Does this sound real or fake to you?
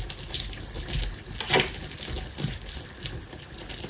real